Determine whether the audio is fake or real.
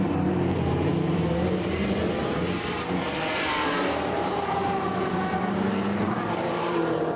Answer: fake